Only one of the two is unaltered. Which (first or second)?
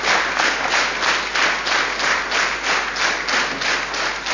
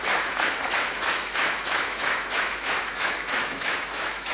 first